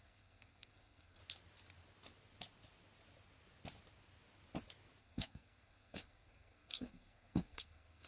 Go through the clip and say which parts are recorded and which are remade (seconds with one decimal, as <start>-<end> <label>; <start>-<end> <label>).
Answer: 0.0-1.2 remade; 1.2-5.0 recorded; 5.0-8.1 remade